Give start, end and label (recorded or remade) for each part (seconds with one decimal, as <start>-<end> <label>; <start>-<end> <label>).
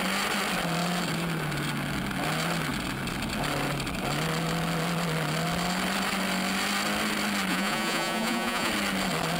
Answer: 0.0-7.5 recorded; 7.5-8.7 remade; 8.7-9.4 recorded